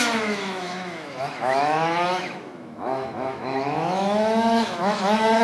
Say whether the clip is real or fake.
fake